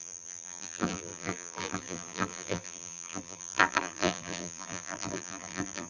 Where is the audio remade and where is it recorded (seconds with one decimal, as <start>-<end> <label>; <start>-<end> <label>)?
0.0-5.9 remade